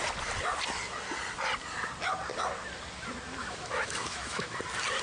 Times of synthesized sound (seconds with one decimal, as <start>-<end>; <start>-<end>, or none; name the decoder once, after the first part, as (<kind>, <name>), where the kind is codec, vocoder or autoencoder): 3.4-4.6 (autoencoder, DAC-VAE)